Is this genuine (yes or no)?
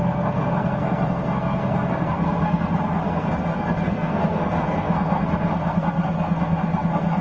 no